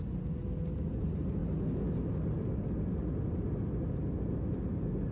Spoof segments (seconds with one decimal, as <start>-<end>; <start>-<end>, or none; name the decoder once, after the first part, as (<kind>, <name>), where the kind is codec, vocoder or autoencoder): none